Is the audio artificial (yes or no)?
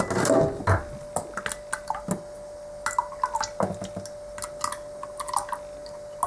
no